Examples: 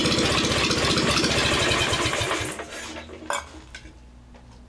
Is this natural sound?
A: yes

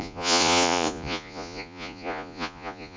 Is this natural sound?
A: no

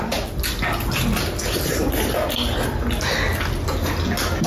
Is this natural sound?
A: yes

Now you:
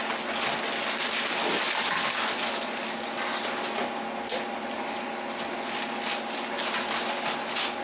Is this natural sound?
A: yes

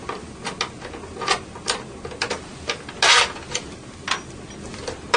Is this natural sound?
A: yes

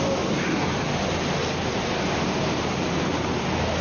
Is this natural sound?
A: yes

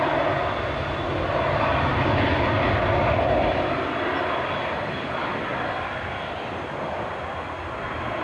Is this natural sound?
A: yes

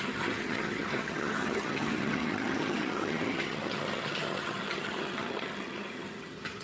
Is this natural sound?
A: no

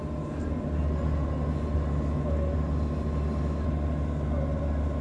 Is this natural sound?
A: yes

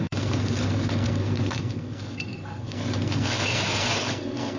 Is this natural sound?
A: no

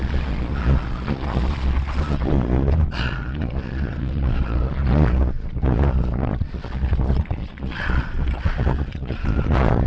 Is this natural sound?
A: no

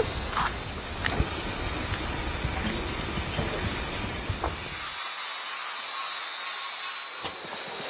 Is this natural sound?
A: yes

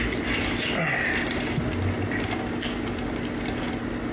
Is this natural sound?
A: yes